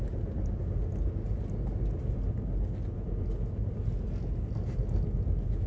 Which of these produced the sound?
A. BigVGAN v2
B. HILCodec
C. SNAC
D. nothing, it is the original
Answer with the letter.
D